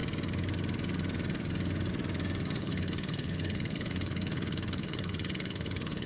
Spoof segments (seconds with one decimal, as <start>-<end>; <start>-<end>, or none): 2.6-6.1